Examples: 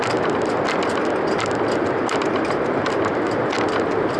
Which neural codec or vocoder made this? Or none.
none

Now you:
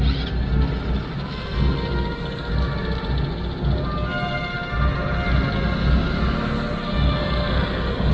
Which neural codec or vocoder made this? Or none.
none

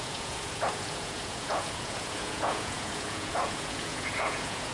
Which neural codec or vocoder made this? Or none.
vocoder, Vocos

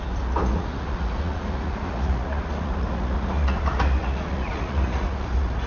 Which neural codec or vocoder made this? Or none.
vocoder, Vocos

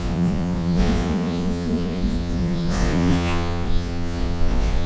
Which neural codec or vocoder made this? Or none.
vocoder, Vocos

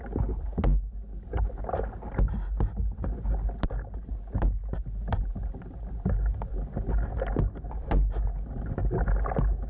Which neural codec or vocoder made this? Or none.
none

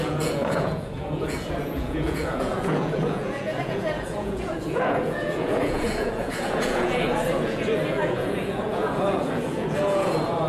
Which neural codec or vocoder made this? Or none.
vocoder, Vocos